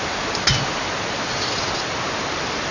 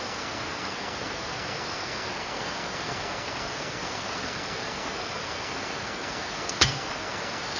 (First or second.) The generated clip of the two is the second